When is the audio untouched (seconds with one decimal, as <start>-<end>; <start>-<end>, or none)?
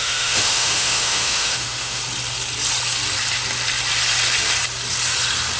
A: 2.0-5.6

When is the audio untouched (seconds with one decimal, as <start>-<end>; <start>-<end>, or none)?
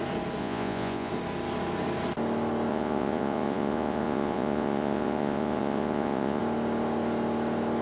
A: 0.0-0.4; 1.1-2.7; 6.4-7.8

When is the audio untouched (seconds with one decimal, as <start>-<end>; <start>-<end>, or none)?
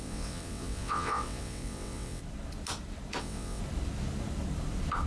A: 2.2-3.2; 3.6-5.1